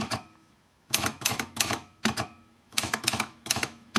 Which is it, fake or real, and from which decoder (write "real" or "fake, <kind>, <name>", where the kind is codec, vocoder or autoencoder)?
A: fake, autoencoder, DAC-VAE